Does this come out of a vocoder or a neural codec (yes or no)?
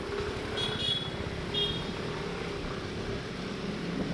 no